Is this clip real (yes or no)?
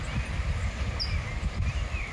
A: yes